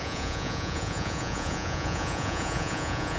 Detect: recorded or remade remade